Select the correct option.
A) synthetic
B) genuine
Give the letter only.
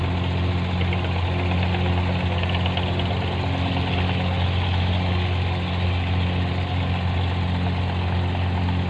B